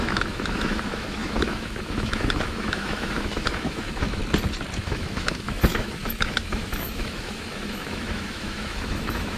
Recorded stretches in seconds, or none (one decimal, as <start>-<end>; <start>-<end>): 4.2-4.8